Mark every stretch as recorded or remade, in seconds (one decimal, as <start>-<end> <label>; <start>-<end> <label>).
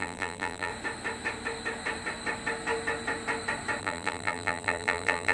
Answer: 0.0-0.7 remade; 0.7-3.8 recorded; 3.8-5.3 remade